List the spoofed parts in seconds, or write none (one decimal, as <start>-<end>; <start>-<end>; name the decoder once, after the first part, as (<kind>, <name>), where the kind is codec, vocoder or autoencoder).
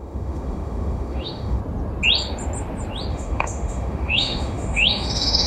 0.0-1.6 (autoencoder, DAC-VAE); 3.1-5.5